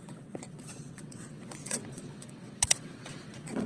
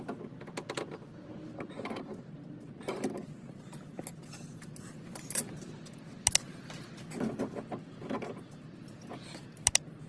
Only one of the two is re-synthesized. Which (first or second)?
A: first